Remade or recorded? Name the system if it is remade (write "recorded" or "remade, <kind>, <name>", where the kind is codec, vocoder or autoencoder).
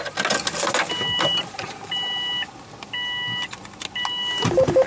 recorded